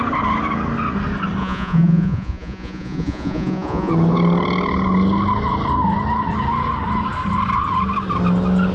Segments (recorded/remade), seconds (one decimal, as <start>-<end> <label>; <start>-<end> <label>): 0.0-1.4 recorded; 1.4-3.9 remade; 3.9-8.7 recorded